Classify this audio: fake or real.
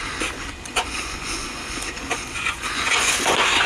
fake